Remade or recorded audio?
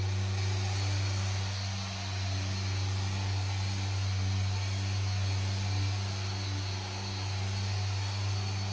recorded